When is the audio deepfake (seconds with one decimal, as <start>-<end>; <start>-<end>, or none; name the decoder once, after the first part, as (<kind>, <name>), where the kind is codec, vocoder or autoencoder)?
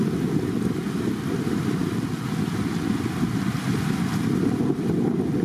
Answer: none